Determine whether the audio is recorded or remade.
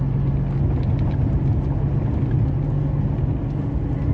recorded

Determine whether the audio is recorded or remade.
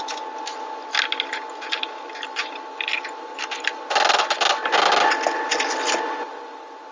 recorded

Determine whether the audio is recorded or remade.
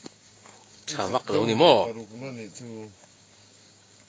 remade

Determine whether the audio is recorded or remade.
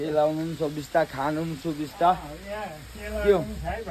recorded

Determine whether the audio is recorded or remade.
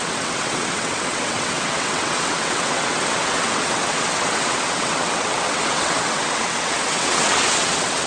remade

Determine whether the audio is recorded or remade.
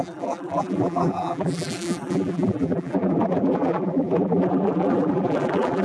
remade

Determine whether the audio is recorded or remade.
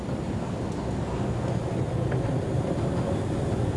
recorded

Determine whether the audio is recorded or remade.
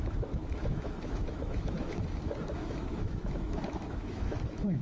remade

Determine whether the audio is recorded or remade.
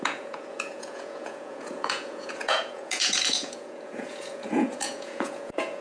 remade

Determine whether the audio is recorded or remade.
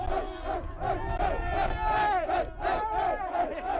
recorded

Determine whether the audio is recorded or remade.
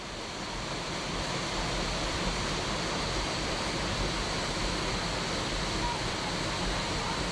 recorded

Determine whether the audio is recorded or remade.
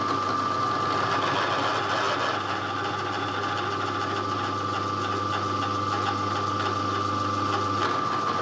recorded